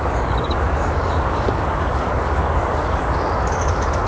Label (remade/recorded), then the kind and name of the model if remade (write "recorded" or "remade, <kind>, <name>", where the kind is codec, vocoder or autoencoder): remade, codec, DAC